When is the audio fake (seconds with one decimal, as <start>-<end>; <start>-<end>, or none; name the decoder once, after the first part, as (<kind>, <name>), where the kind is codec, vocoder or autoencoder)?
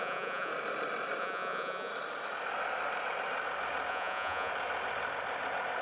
0.0-0.5 (vocoder, Vocos); 1.2-1.9; 3.9-4.5